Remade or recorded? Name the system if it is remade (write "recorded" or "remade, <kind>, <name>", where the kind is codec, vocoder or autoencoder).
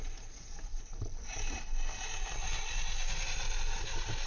recorded